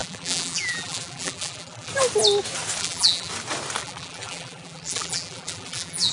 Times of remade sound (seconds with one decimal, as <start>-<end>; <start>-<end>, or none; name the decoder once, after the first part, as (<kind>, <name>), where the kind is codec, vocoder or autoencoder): 0.0-1.9 (vocoder, BigVGAN v2); 2.8-3.3; 3.8-6.1